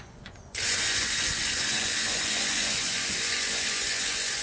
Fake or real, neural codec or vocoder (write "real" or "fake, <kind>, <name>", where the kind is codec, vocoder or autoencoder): fake, vocoder, Vocos